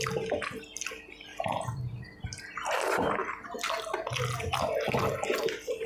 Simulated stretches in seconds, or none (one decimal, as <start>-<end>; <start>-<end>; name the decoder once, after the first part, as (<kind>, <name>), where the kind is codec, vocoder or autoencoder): 1.3-2.4 (vocoder, BigVGAN v2)